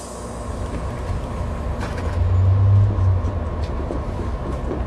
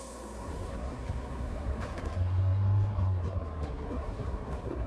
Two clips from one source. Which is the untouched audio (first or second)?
first